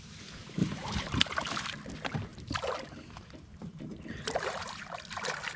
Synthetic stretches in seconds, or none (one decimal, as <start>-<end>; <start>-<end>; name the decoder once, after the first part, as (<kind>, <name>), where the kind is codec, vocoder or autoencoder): 0.6-1.2 (vocoder, BigVGAN v2); 2.3-5.0